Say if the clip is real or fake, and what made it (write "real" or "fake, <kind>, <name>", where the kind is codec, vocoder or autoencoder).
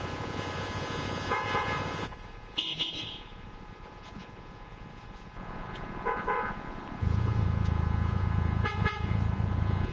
fake, vocoder, Vocos